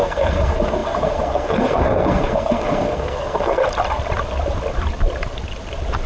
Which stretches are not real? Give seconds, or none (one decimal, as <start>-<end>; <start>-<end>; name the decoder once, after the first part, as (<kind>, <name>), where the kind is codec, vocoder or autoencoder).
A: 0.0-3.6 (codec, SNAC)